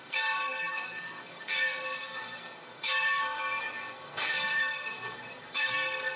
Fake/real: fake